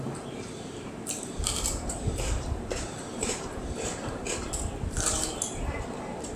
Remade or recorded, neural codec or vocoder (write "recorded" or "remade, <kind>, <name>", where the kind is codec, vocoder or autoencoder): remade, vocoder, BigVGAN v2